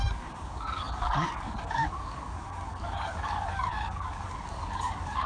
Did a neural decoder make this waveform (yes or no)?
yes